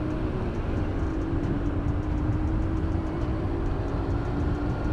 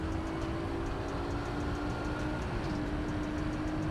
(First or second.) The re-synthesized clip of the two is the first